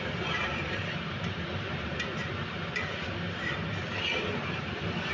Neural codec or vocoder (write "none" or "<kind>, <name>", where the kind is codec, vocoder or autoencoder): vocoder, BigVGAN v2